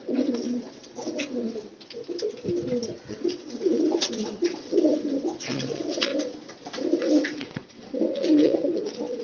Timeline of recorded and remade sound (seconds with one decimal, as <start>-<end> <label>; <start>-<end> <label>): 0.0-1.7 remade; 1.7-3.1 recorded; 3.1-6.1 remade; 6.1-7.0 recorded; 7.0-9.2 remade

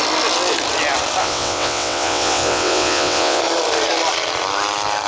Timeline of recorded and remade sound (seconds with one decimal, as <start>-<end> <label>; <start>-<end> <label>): 0.0-1.2 recorded; 1.2-3.4 remade; 3.4-5.1 recorded

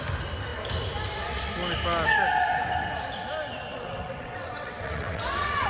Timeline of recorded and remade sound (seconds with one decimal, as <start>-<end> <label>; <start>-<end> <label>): 0.0-3.7 recorded; 3.7-5.7 remade

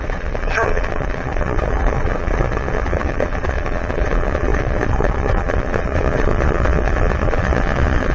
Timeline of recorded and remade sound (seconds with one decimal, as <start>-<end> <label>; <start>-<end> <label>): 0.0-8.1 remade

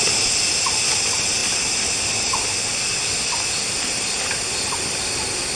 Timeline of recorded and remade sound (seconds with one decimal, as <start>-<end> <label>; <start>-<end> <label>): 0.0-5.6 recorded

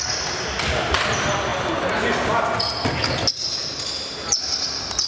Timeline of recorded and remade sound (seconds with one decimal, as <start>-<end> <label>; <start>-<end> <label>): 0.0-5.1 recorded